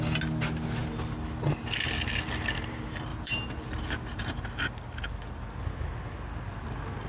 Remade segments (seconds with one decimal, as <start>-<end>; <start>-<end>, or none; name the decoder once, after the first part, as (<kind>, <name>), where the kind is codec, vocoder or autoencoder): 3.1-4.2 (vocoder, BigVGAN v2)